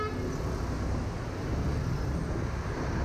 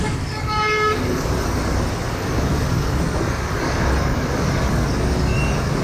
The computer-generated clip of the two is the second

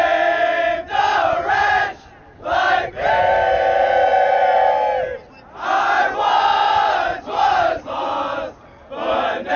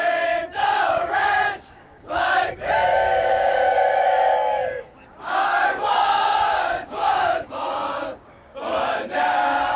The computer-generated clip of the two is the second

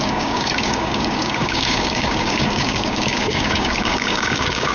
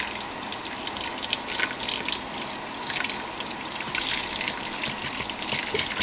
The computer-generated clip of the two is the first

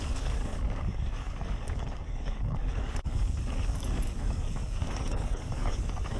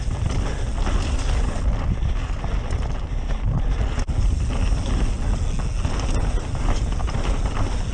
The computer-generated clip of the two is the first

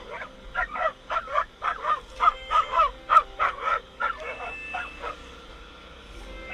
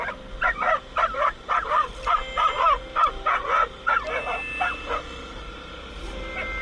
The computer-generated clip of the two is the first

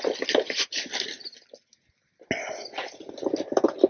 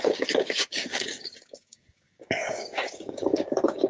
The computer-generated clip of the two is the second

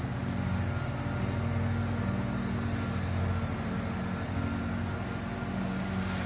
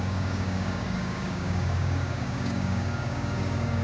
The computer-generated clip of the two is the second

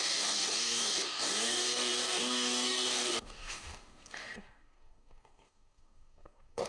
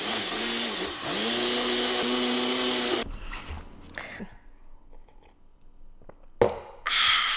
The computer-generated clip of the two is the first